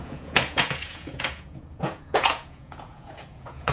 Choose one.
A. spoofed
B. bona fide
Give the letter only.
A